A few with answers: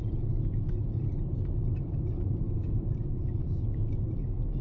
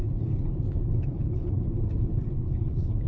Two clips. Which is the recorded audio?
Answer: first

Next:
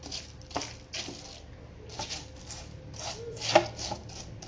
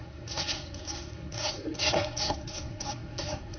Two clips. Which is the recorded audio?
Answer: first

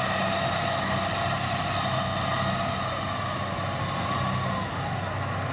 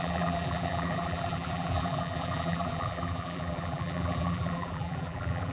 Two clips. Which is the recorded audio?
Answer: first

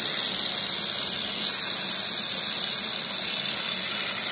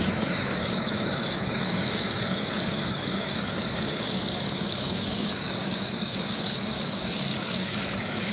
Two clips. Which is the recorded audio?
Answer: first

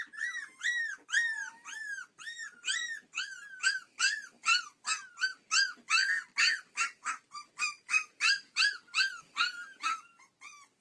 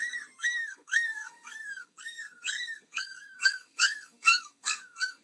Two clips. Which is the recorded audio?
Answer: first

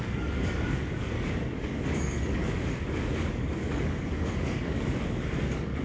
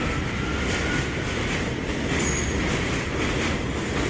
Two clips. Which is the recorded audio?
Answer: second